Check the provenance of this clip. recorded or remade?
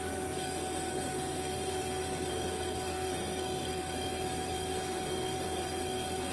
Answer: remade